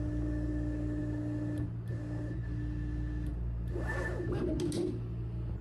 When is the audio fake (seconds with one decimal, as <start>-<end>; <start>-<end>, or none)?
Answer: none